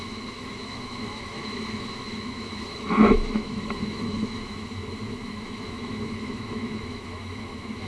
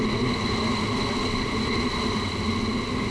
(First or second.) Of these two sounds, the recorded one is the second